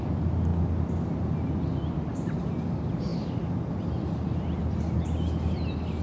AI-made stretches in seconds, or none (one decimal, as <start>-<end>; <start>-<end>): none